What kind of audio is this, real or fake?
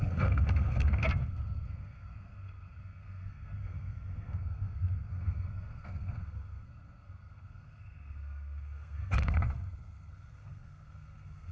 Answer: fake